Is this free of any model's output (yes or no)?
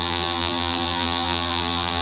no